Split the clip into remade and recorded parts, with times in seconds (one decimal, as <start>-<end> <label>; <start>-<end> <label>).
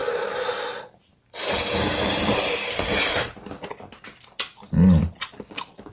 0.0-1.4 remade; 1.4-2.5 recorded; 2.5-4.4 remade; 4.4-5.9 recorded